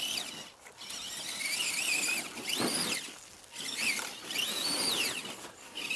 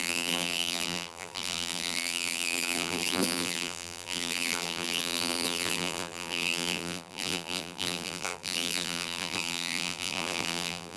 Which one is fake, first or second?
second